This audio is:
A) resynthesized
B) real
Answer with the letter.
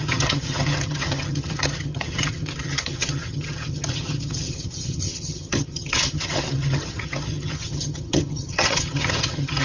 A